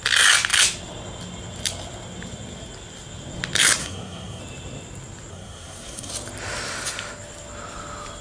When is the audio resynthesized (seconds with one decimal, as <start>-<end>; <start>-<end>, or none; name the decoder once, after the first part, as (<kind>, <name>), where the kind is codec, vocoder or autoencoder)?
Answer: 3.8-4.4 (codec, SNAC); 5.3-6.1